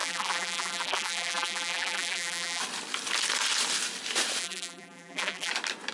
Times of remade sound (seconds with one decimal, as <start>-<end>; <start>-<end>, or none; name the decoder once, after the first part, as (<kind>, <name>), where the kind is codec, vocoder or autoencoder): 0.0-2.6 (vocoder, BigVGAN v2); 4.4-5.5

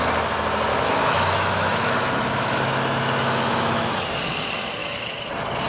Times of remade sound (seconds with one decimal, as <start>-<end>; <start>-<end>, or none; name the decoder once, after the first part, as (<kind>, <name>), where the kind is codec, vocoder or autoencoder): 0.7-4.1 (autoencoder, DAC-VAE); 4.8-5.3

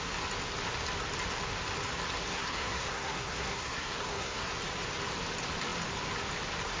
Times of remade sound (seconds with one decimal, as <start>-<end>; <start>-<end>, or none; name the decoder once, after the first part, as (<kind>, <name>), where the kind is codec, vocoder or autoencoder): 2.3-4.5 (codec, SNAC)

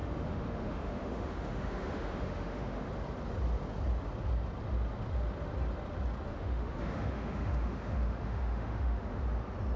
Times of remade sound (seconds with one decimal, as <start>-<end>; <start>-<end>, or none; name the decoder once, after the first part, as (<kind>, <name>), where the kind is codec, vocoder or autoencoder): 0.0-2.9 (autoencoder, DAC-VAE); 6.3-9.2